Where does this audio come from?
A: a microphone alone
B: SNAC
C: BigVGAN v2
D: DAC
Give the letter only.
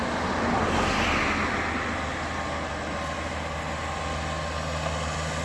A